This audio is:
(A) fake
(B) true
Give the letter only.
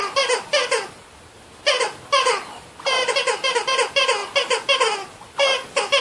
B